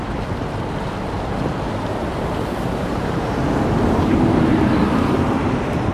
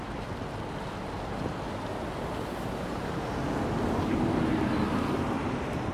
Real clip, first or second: second